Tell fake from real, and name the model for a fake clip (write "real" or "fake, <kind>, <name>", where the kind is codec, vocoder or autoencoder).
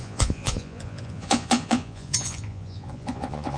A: fake, vocoder, Vocos